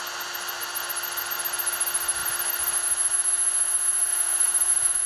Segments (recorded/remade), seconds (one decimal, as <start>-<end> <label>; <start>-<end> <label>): 0.0-4.1 recorded; 4.1-5.1 remade